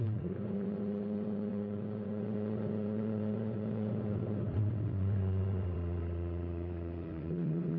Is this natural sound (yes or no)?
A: no